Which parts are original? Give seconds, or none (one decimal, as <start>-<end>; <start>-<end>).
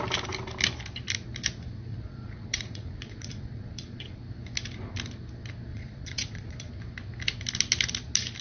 0.0-1.9; 4.2-5.7; 6.7-8.4